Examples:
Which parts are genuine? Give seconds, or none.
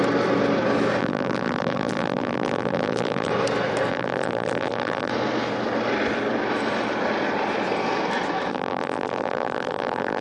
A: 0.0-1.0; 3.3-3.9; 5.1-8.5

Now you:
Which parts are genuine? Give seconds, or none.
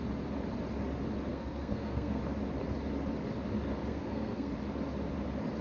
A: 0.0-1.3; 2.2-3.9; 4.5-5.6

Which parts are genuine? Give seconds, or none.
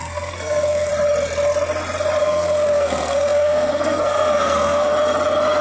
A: 0.9-2.2; 4.9-5.6